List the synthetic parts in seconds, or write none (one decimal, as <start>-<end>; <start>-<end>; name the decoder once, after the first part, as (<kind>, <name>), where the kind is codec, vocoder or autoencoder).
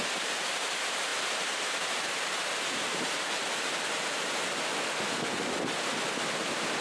none